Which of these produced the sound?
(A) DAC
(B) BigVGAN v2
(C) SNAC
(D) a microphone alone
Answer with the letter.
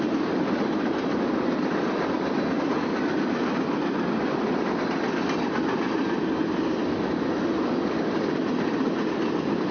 D